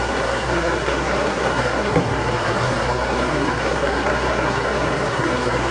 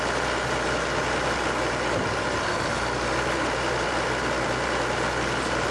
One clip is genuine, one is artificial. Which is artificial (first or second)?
first